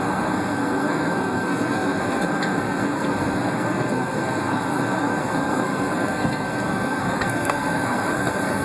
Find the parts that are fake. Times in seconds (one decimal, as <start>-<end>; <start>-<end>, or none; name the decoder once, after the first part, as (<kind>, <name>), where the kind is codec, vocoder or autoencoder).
0.0-8.6 (codec, SNAC)